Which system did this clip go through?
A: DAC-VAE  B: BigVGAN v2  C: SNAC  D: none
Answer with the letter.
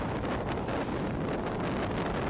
D